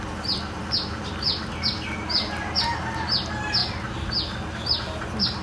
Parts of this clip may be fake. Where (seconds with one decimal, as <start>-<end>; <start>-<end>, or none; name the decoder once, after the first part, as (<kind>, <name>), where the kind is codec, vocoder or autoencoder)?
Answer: none